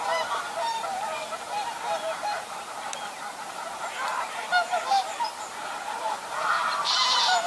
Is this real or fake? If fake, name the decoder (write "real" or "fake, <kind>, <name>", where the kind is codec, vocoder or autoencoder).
fake, vocoder, BigVGAN v2